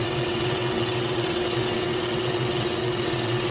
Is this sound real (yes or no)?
no